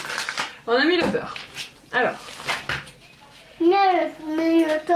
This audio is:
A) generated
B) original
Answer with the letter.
B